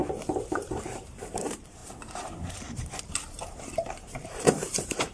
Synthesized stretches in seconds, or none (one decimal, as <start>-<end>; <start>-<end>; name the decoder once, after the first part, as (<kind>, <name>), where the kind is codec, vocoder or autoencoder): 0.5-5.1 (vocoder, BigVGAN v2)